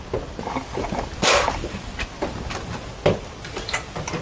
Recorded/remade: recorded